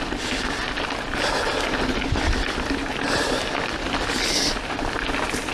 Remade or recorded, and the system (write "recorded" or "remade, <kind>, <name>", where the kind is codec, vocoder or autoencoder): recorded